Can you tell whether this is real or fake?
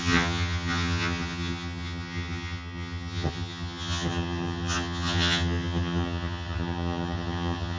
fake